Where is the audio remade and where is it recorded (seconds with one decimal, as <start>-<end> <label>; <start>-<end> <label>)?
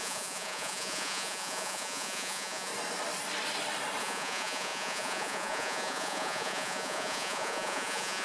0.0-2.7 remade; 2.7-4.0 recorded; 4.0-8.2 remade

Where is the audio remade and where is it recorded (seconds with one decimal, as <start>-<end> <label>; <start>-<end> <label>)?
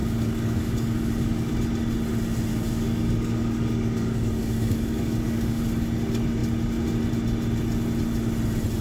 0.0-1.5 remade; 1.5-2.5 recorded; 2.5-5.6 remade; 5.6-8.8 recorded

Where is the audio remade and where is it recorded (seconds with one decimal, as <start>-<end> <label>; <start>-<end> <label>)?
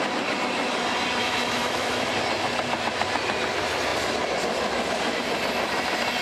0.0-1.2 recorded; 1.2-2.1 remade; 2.1-6.2 recorded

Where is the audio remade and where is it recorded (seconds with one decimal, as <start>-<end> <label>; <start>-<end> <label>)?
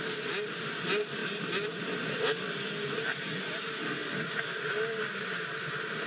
0.0-6.1 recorded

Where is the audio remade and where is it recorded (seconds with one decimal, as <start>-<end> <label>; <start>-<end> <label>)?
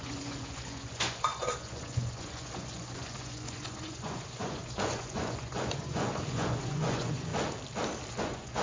0.0-7.3 remade; 7.3-8.2 recorded; 8.2-8.6 remade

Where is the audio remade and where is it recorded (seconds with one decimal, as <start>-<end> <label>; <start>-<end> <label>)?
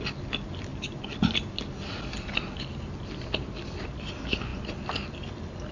0.0-5.7 recorded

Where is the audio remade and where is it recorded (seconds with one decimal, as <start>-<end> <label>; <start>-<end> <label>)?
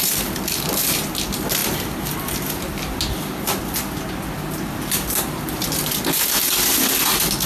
0.0-7.5 recorded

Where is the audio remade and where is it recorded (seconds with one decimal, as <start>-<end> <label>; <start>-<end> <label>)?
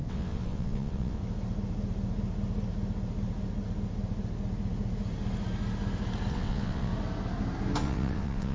0.0-1.2 remade; 1.2-6.3 recorded; 6.3-6.9 remade; 6.9-7.8 recorded; 7.8-8.5 remade